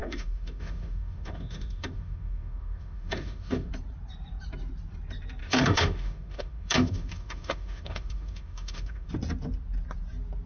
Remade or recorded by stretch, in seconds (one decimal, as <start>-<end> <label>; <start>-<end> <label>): 0.0-3.7 remade; 3.7-5.4 recorded; 5.4-9.1 remade; 9.1-10.5 recorded